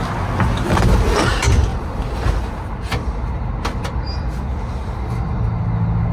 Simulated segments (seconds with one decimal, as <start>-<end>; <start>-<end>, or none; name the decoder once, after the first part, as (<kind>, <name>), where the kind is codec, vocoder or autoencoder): 1.7-2.3 (vocoder, BigVGAN v2)